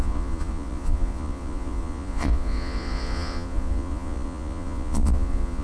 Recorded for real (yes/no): no